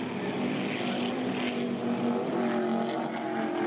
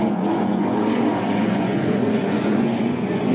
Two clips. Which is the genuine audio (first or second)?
first